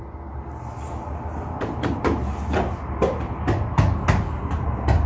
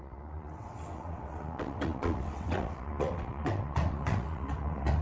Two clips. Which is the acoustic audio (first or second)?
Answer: first